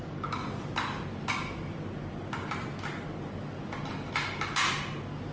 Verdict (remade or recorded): recorded